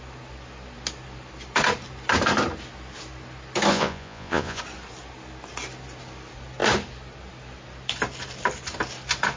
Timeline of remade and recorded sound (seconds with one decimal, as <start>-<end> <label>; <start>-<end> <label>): 0.0-3.7 recorded; 3.7-4.6 remade; 4.6-9.4 recorded